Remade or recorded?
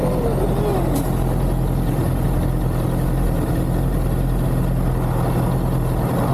recorded